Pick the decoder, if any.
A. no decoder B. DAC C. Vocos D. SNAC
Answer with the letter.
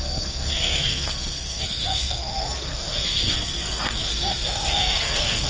D